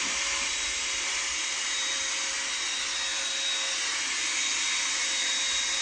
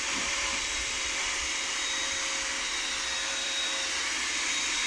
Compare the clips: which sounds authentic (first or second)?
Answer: first